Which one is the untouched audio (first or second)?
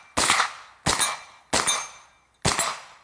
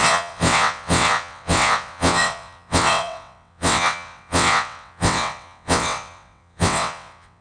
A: first